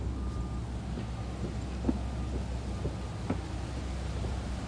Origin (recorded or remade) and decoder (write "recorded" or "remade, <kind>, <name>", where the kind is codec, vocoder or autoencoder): recorded